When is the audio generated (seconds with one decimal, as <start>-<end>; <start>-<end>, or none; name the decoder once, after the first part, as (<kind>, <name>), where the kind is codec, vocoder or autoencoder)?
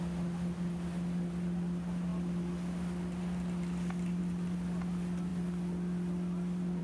none